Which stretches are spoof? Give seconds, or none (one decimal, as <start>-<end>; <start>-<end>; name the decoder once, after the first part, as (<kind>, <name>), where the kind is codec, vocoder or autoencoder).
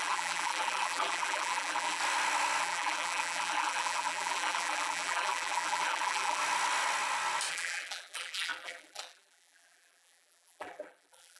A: 0.0-2.0 (vocoder, BigVGAN v2); 2.6-6.4; 7.5-11.4